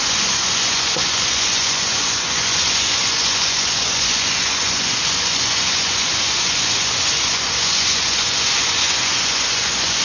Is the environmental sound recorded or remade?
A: remade